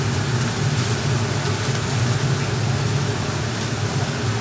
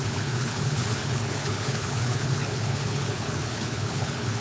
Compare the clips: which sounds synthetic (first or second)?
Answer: second